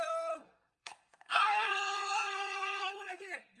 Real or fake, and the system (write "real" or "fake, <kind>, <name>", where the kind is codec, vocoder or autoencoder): fake, codec, SNAC